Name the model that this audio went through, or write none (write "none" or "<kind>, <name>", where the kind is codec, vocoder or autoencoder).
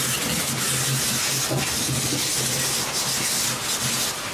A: none